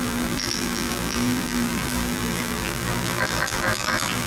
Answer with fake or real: fake